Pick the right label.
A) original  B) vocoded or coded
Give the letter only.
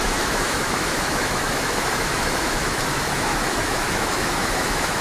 B